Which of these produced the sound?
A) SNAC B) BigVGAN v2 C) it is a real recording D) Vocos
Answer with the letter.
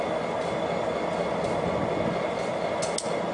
C